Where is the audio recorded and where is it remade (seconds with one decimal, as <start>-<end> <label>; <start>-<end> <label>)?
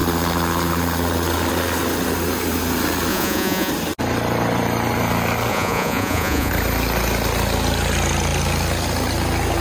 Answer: 0.0-3.1 recorded; 3.1-3.7 remade; 3.7-5.5 recorded; 5.5-6.5 remade; 6.5-9.6 recorded